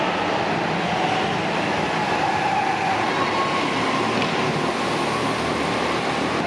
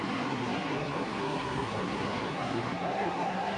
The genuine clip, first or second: first